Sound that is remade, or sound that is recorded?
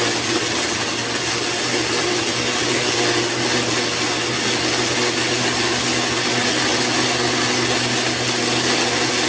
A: recorded